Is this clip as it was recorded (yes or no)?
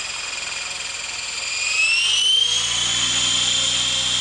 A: yes